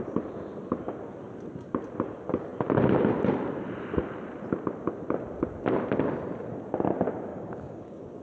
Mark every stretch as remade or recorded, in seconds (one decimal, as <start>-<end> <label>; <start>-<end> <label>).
0.0-7.3 recorded; 7.3-8.2 remade